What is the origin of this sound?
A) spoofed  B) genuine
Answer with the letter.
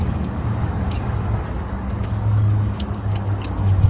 A